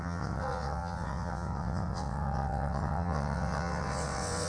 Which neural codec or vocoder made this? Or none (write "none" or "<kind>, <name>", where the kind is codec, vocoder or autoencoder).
vocoder, WaveNeXt